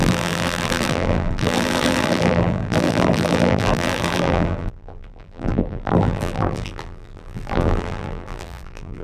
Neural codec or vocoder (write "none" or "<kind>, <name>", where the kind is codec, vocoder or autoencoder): vocoder, BigVGAN v2